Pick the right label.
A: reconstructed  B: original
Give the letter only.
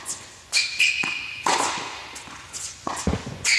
A